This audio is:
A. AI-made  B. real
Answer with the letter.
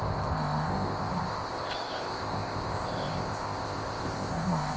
A